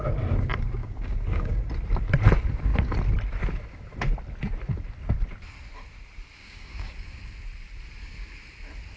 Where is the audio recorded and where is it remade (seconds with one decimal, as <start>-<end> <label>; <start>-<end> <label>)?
0.0-0.8 recorded; 0.8-1.7 remade; 1.7-6.4 recorded; 6.4-7.2 remade; 7.2-9.0 recorded